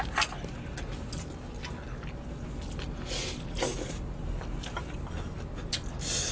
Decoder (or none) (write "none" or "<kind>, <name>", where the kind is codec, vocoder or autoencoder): none